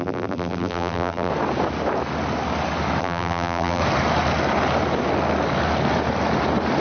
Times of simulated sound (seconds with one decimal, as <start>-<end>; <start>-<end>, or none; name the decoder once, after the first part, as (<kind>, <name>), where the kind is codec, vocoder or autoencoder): 0.0-1.3 (vocoder, BigVGAN v2); 3.0-3.8